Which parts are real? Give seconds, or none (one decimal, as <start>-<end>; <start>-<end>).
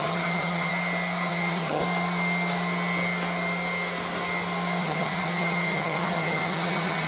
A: 0.7-1.3; 1.8-4.8